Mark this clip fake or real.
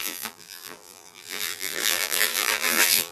fake